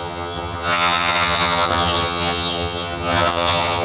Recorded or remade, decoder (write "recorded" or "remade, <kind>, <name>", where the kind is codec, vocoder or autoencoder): remade, vocoder, HiFi-GAN